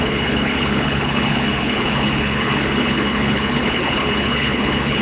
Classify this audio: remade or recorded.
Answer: remade